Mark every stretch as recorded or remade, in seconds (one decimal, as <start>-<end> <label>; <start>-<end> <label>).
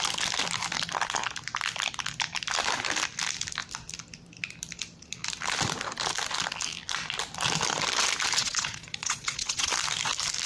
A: 0.0-8.4 recorded; 8.4-9.7 remade; 9.7-10.5 recorded